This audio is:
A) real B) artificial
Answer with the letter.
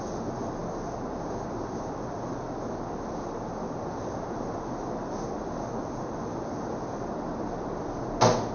A